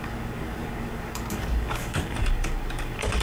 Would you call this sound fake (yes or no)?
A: yes